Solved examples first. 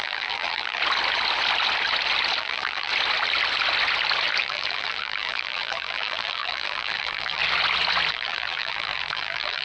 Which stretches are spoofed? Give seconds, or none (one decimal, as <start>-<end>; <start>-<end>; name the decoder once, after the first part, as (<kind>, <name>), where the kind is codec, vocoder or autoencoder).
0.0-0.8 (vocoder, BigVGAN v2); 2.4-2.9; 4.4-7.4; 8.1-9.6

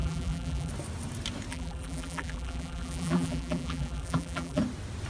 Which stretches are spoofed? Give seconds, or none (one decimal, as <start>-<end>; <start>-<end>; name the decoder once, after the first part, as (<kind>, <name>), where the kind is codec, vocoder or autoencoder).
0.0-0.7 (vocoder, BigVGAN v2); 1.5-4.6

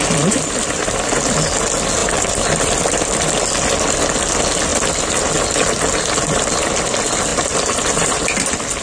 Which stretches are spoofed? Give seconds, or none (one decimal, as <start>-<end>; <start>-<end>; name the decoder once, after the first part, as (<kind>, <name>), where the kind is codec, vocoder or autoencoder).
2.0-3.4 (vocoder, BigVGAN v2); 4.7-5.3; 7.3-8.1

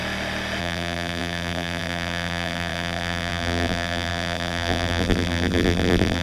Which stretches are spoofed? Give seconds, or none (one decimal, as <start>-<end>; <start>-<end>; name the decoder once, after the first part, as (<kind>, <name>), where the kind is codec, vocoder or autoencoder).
0.6-6.2 (vocoder, BigVGAN v2)

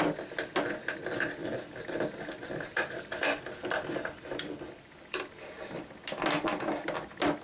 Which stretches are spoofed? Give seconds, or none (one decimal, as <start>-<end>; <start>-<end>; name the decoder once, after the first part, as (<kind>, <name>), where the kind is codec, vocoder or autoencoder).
1.4-5.7 (vocoder, BigVGAN v2)

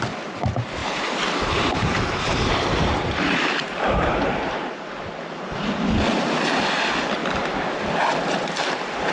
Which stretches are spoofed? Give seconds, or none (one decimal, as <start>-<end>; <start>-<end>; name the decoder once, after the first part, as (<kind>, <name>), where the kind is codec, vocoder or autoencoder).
0.8-4.6 (vocoder, BigVGAN v2)